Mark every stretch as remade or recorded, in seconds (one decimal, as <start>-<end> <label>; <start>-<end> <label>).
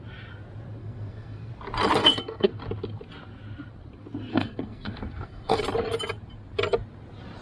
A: 0.0-0.8 recorded; 0.8-1.5 remade; 1.5-2.0 recorded; 2.0-2.6 remade; 2.6-4.3 recorded; 4.3-5.6 remade; 5.6-7.4 recorded